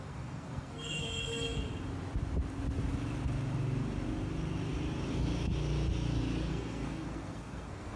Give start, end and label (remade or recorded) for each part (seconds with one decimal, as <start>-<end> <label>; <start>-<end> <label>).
0.0-1.7 remade; 1.7-6.5 recorded; 6.5-8.0 remade